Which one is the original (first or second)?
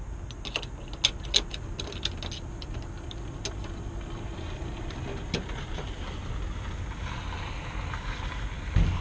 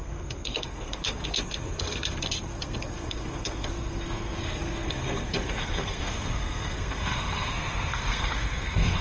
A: first